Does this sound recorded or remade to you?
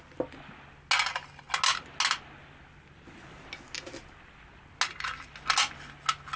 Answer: recorded